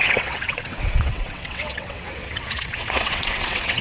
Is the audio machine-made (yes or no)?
yes